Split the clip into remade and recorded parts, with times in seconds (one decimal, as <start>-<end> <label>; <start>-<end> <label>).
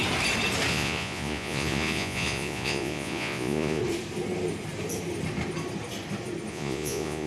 0.0-0.7 recorded; 0.7-3.8 remade; 3.8-6.5 recorded; 6.5-7.3 remade